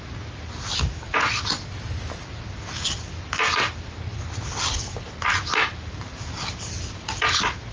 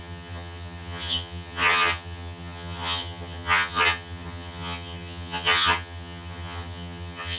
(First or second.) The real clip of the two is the first